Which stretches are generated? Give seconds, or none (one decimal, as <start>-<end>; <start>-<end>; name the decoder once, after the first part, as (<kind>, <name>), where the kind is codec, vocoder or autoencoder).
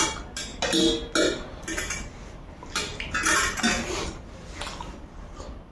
2.9-3.6 (vocoder, BigVGAN v2); 4.4-5.3